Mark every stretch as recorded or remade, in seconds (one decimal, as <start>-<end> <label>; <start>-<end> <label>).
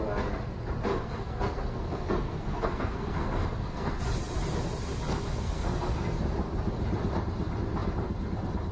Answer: 0.0-0.9 recorded; 0.9-4.0 remade; 4.0-5.1 recorded; 5.1-6.2 remade; 6.2-8.7 recorded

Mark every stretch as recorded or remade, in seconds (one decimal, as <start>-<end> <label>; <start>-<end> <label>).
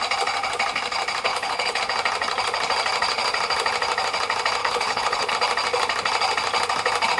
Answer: 0.0-1.3 recorded; 1.3-1.8 remade; 1.8-4.6 recorded; 4.6-5.3 remade; 5.3-7.2 recorded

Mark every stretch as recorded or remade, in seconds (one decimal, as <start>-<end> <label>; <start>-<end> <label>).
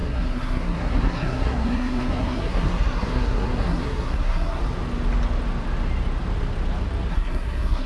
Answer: 0.0-4.6 remade; 4.6-7.1 recorded; 7.1-7.9 remade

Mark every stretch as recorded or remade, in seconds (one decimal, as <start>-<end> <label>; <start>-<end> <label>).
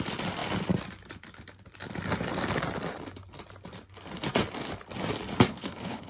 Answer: 0.0-5.5 recorded; 5.5-6.1 remade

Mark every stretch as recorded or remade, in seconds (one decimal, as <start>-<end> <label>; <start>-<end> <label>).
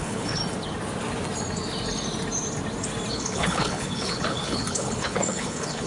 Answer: 0.0-0.4 remade; 0.4-3.1 recorded; 3.1-5.9 remade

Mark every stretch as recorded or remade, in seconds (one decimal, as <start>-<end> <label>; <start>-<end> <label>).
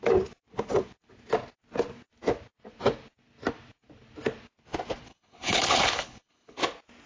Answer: 0.0-5.1 recorded; 5.1-6.6 remade; 6.6-7.1 recorded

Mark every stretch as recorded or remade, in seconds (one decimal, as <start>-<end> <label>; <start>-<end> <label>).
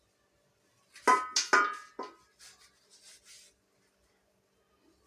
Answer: 0.0-5.1 recorded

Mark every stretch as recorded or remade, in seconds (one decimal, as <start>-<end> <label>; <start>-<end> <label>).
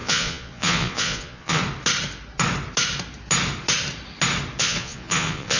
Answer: 0.0-1.6 remade; 1.6-4.6 recorded; 4.6-5.6 remade